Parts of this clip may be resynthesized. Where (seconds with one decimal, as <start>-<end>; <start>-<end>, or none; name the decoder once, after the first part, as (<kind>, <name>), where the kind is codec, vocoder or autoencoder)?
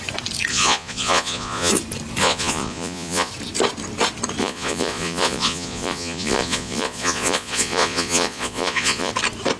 0.5-1.7 (vocoder, Vocos); 2.2-3.3; 4.4-9.1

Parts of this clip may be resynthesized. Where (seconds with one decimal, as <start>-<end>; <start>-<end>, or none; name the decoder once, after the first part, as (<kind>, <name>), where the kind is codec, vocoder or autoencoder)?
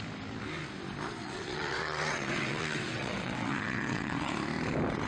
1.2-4.3 (vocoder, WaveNeXt)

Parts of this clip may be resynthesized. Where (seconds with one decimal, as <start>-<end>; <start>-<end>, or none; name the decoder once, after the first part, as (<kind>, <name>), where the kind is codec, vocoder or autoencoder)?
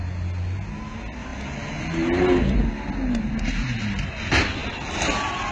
none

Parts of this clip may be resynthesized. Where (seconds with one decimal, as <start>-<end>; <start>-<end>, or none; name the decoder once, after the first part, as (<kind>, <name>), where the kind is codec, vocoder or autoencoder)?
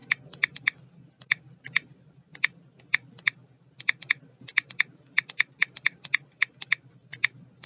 none